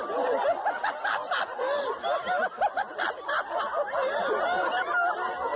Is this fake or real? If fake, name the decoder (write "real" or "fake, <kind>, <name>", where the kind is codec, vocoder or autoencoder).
real